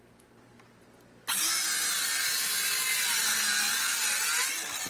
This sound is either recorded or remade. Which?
recorded